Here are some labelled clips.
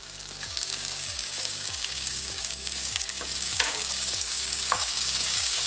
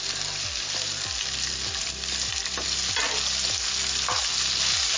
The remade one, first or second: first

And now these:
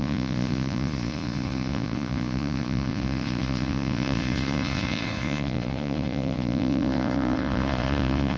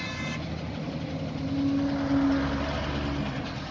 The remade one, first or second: first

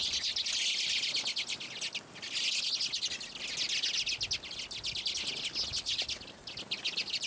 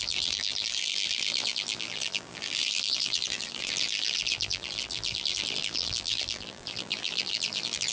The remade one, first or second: second